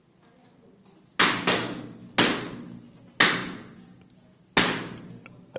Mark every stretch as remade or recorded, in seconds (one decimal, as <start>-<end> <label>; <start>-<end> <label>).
0.0-3.4 recorded; 3.4-4.4 remade; 4.4-5.6 recorded